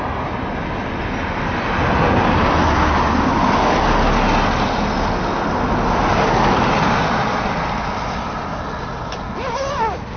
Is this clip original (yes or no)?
yes